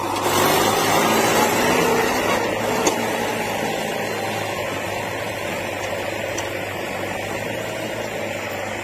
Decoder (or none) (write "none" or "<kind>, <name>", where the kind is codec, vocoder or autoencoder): none